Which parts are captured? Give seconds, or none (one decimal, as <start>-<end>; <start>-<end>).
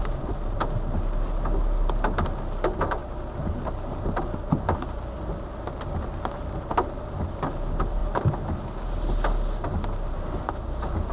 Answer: 0.0-11.1